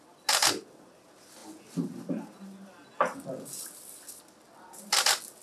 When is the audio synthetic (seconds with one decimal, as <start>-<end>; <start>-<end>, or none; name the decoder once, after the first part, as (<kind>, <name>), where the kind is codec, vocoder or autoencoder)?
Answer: none